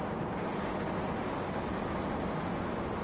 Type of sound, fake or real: real